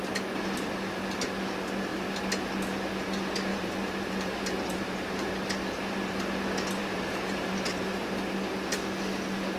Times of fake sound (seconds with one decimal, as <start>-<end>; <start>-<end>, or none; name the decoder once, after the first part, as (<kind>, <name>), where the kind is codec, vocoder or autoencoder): 3.5-5.3 (vocoder, BigVGAN v2); 6.8-8.0

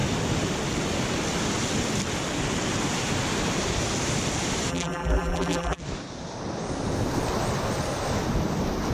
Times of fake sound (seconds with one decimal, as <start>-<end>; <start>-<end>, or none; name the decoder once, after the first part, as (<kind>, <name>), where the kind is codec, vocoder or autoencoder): 4.7-5.8 (vocoder, BigVGAN v2)